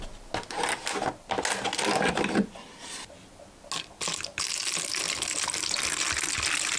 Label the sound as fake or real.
real